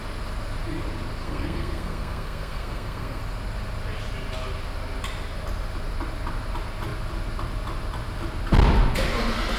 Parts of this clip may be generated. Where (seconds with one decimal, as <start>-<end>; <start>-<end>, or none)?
1.2-3.2